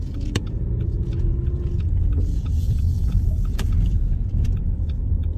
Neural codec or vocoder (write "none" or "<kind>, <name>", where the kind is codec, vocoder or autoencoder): vocoder, Vocos